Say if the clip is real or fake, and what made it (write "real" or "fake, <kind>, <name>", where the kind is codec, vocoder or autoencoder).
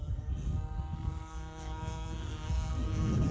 fake, codec, SNAC